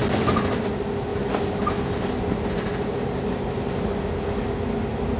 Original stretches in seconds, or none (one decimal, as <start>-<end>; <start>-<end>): 0.0-5.2